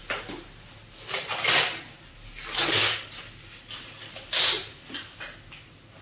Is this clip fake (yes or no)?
no